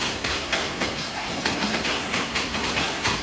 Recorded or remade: remade